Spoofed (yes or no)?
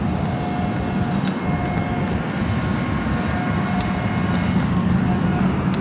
no